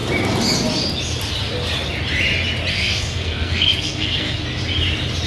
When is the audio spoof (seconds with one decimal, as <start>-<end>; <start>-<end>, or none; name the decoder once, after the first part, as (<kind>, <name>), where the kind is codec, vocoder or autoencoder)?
2.7-4.4 (codec, SNAC)